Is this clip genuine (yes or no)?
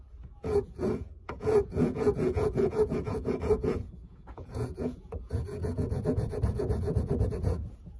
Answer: no